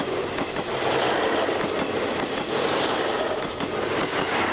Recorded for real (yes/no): yes